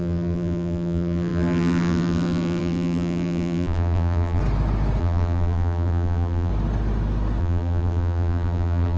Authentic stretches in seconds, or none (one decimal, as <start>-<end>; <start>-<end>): 4.4-5.0; 6.5-7.4